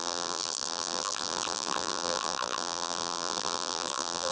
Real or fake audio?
fake